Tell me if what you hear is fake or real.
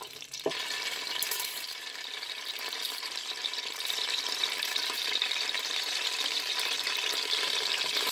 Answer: fake